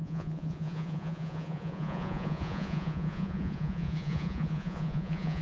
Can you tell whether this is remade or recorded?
remade